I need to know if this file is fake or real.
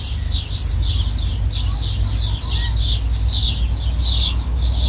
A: real